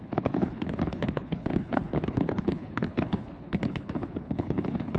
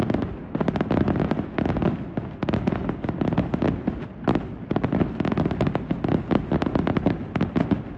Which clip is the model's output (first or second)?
first